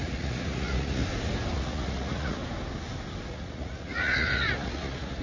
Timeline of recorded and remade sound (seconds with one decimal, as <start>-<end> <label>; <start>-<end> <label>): 0.0-1.0 remade; 1.0-1.5 recorded; 1.5-2.4 remade; 2.4-3.3 recorded; 3.3-5.2 remade